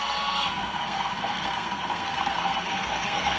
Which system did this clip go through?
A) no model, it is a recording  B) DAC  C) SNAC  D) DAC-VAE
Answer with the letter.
C